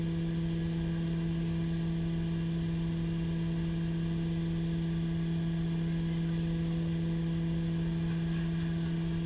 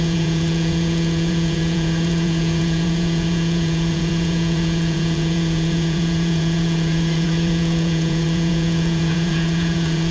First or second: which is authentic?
first